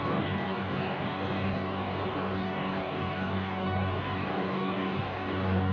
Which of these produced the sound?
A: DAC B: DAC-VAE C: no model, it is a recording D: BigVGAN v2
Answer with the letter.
A